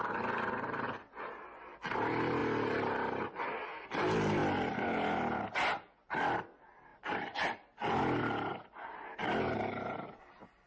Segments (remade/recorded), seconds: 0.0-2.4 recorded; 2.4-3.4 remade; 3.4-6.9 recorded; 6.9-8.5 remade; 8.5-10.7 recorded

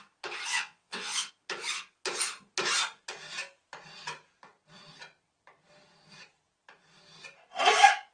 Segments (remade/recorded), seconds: 0.0-0.5 recorded; 0.5-1.3 remade; 1.3-8.1 recorded

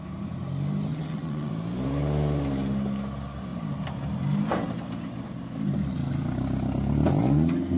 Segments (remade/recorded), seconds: 0.0-0.9 recorded; 0.9-1.5 remade; 1.5-7.8 recorded

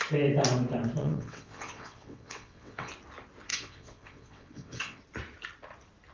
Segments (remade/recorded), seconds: 0.0-1.0 recorded; 1.0-2.9 remade; 2.9-3.5 recorded; 3.5-5.0 remade; 5.0-6.1 recorded

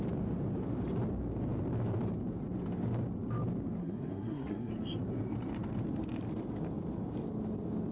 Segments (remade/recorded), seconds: 0.0-3.8 recorded; 3.8-4.7 remade; 4.7-7.9 recorded

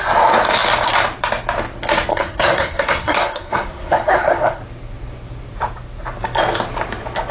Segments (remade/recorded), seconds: 0.0-2.1 recorded; 2.1-4.6 remade; 4.6-7.3 recorded

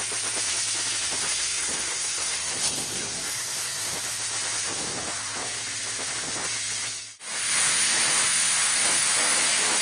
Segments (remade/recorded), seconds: 0.0-1.2 recorded; 1.2-3.9 remade; 3.9-9.8 recorded

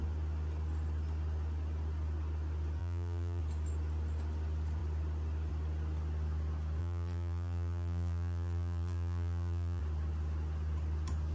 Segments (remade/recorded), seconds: 0.0-2.8 recorded; 2.8-3.4 remade; 3.4-6.8 recorded; 6.8-9.8 remade; 9.8-11.3 recorded